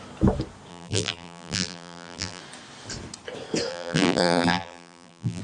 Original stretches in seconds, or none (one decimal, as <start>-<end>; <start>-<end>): 0.0-0.7; 2.4-3.7